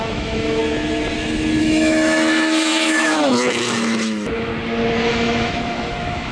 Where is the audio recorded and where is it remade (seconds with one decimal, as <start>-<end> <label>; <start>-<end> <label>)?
0.0-0.6 remade; 0.6-1.6 recorded; 1.6-4.5 remade; 4.5-5.1 recorded; 5.1-6.3 remade